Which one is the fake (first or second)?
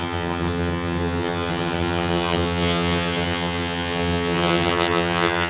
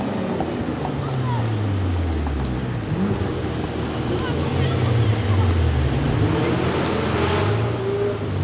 first